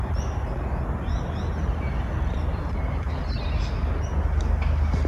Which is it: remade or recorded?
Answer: recorded